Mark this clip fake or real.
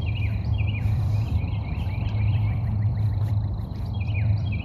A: fake